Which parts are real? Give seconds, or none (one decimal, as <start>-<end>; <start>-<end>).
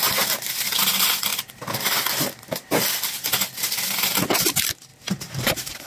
0.0-5.9